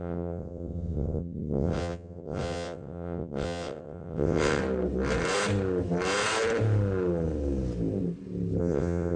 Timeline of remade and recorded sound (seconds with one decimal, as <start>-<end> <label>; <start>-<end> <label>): 0.0-4.6 remade; 4.6-8.6 recorded; 8.6-9.2 remade